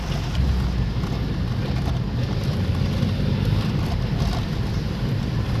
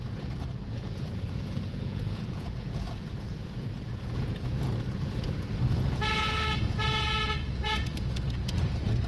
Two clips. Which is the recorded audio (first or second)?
first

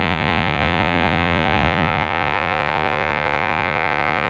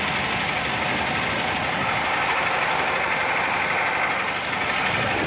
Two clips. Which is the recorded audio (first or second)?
second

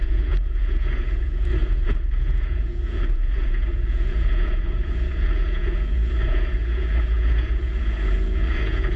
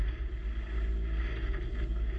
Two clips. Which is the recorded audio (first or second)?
second